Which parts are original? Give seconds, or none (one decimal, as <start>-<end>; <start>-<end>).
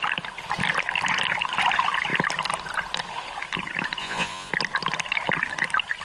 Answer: 0.0-4.0; 4.5-6.0